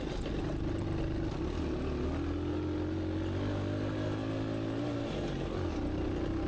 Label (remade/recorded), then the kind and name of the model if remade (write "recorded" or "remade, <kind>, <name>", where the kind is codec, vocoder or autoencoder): recorded